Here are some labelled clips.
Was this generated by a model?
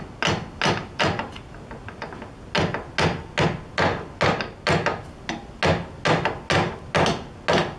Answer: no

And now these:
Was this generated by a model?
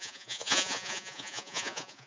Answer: yes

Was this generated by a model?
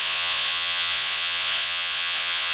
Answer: yes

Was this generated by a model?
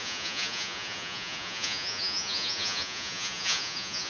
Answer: yes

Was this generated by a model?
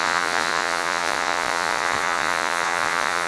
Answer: yes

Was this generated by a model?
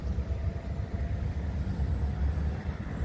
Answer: no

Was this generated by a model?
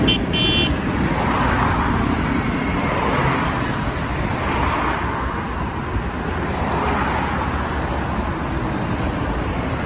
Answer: no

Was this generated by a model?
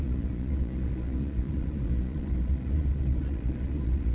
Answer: yes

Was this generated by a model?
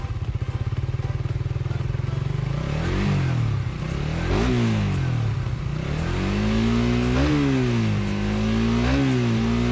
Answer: no